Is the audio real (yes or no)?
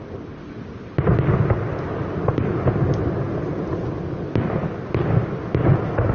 yes